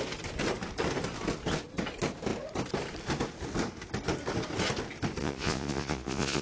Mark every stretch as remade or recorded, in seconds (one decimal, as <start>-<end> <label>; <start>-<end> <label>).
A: 0.0-5.2 recorded; 5.2-6.4 remade